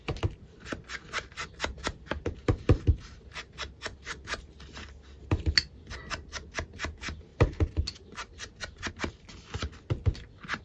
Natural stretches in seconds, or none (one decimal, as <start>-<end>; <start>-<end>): 0.0-10.6